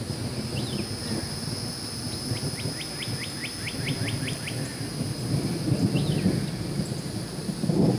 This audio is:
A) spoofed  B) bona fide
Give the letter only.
B